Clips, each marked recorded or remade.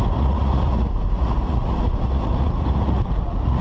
remade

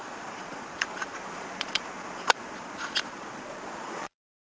remade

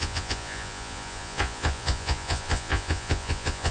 remade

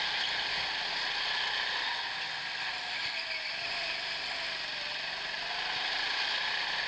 recorded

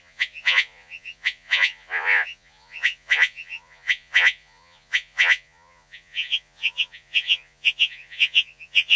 remade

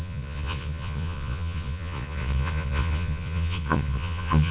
remade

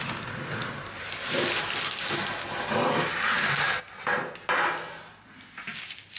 recorded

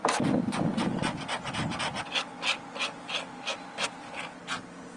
recorded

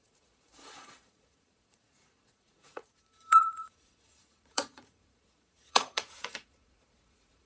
remade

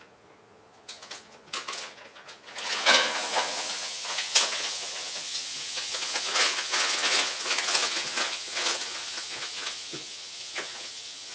remade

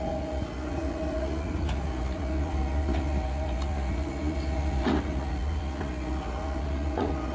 remade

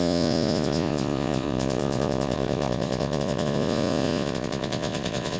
remade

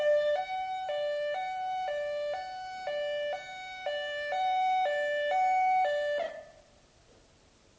recorded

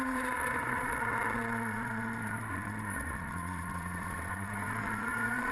remade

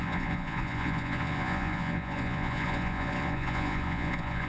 remade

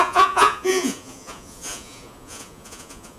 remade